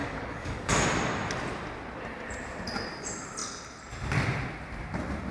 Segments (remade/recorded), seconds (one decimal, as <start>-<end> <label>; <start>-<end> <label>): 0.0-0.7 remade; 0.7-5.3 recorded